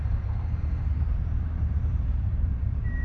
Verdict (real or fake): fake